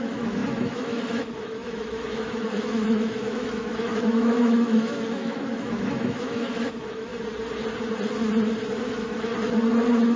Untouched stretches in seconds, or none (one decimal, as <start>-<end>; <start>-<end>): 7.1-8.7; 9.3-10.2